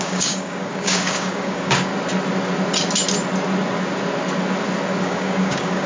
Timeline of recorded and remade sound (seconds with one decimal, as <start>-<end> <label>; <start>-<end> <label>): 0.0-1.9 remade; 1.9-5.0 recorded; 5.0-5.9 remade